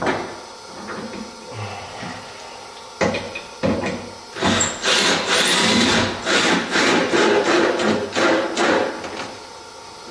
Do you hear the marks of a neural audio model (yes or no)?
no